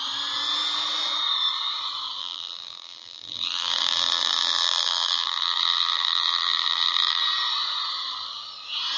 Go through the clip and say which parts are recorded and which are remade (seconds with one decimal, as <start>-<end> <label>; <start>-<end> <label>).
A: 0.0-2.2 recorded; 2.2-7.2 remade; 7.2-9.0 recorded